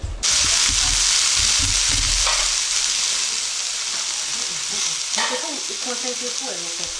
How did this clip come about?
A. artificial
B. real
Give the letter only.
B